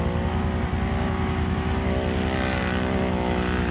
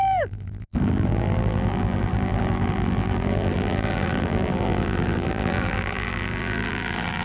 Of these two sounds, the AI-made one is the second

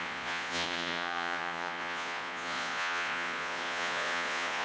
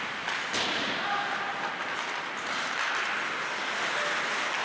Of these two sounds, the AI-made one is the first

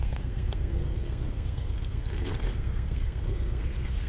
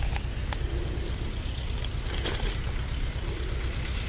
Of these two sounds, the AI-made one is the first